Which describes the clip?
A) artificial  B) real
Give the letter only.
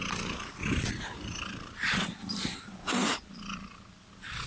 B